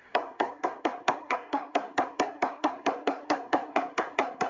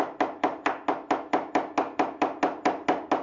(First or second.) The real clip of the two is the second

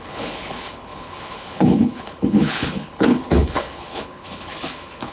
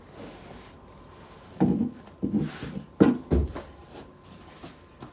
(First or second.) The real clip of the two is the second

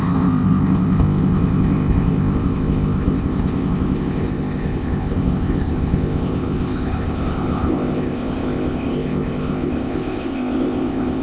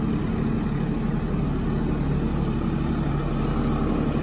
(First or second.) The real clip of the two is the second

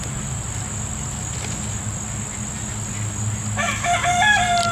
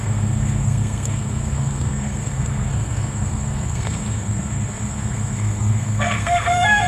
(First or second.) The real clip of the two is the first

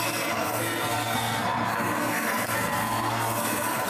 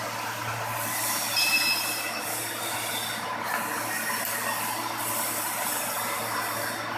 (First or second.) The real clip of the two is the second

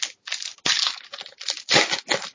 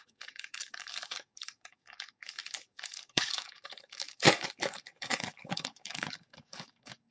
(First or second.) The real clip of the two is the first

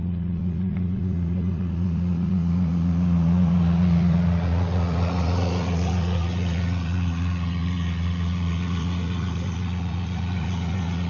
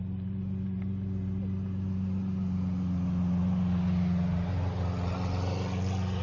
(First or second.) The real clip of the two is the second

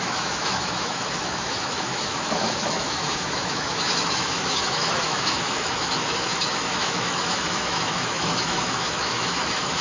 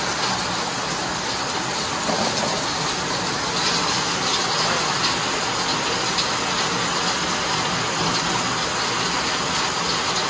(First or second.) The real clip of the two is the second